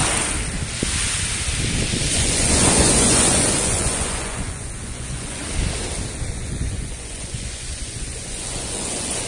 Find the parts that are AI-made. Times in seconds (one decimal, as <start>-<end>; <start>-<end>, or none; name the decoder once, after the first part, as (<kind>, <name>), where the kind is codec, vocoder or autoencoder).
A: 2.1-5.4 (vocoder, Vocos); 6.3-9.3